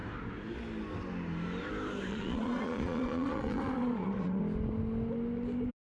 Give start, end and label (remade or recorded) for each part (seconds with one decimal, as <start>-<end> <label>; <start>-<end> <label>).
0.0-2.1 recorded; 2.1-4.4 remade; 4.4-5.9 recorded